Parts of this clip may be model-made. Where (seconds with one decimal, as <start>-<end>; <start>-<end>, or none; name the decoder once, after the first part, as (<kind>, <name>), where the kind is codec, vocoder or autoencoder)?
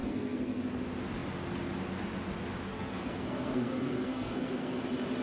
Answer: 0.0-0.6 (codec, SNAC); 2.7-4.8